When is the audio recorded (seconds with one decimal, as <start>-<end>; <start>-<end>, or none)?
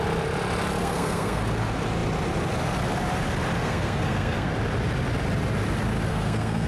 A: 0.0-0.8; 1.4-3.6; 4.5-6.1